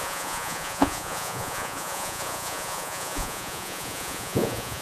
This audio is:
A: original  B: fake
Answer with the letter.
B